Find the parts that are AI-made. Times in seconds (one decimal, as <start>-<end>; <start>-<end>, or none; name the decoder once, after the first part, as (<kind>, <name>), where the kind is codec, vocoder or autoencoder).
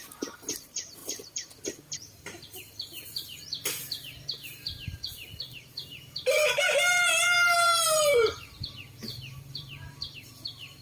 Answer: 0.0-10.8 (vocoder, BigVGAN v2)